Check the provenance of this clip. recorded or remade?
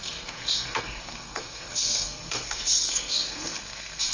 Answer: remade